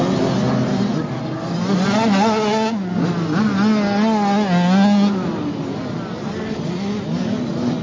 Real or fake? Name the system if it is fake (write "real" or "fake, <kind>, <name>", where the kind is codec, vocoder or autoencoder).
real